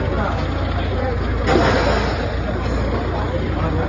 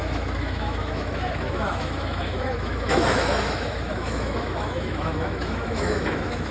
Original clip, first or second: first